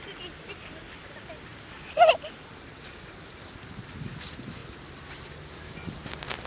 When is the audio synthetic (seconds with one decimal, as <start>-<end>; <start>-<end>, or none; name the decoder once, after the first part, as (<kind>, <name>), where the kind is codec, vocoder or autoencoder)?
none